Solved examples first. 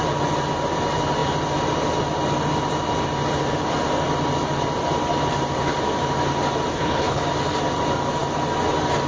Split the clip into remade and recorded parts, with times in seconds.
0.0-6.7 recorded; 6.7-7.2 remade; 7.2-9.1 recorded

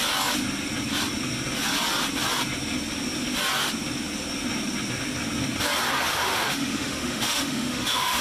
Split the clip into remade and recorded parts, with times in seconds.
0.0-6.1 recorded; 6.1-8.2 remade

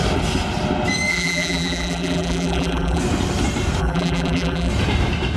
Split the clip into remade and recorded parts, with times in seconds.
0.0-1.1 recorded; 1.1-3.0 remade; 3.0-3.8 recorded; 3.8-4.7 remade; 4.7-5.4 recorded

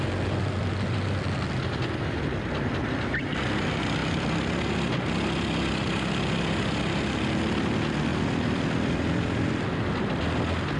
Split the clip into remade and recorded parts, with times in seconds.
0.0-8.1 recorded; 8.1-9.8 remade; 9.8-10.8 recorded

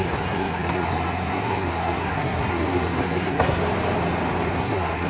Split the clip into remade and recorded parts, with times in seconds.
0.0-3.6 remade; 3.6-4.6 recorded; 4.6-5.1 remade